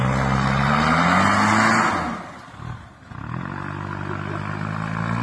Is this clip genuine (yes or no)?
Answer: yes